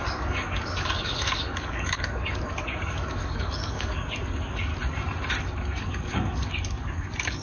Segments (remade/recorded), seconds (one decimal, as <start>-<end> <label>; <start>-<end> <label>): 0.0-4.7 remade; 4.7-5.4 recorded; 5.4-7.4 remade